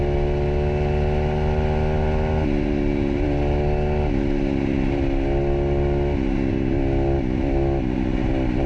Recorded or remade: recorded